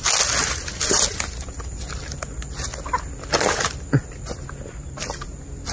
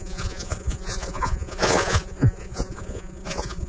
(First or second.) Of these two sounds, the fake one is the second